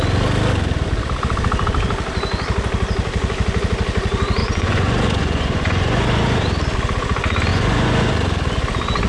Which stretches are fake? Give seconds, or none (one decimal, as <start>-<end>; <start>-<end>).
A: 4.4-6.5; 7.5-8.1